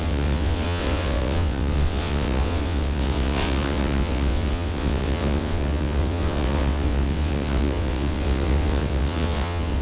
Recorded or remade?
remade